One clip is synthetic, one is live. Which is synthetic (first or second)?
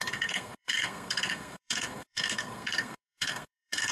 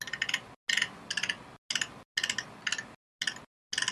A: first